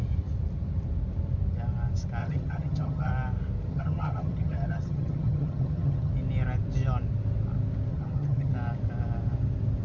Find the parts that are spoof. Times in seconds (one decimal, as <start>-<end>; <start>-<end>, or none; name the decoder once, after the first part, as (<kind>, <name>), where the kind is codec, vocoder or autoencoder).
2.2-3.1 (vocoder, HiFi-GAN); 3.7-6.1; 7.9-8.5